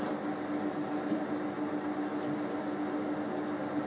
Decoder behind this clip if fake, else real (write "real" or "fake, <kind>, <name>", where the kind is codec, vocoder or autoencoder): real